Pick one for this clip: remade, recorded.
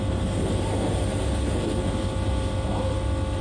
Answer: recorded